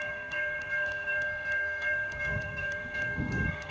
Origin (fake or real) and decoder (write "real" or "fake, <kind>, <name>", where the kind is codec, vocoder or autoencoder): fake, codec, SNAC